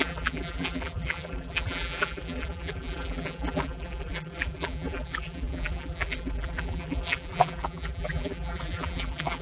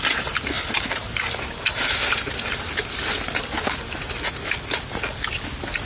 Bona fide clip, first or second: second